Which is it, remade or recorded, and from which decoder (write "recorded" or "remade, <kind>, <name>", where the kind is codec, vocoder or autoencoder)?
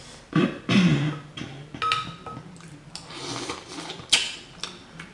recorded